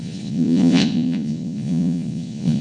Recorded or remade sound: remade